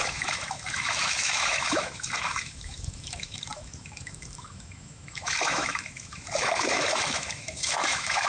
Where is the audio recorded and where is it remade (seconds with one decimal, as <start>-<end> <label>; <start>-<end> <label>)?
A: 0.0-8.3 remade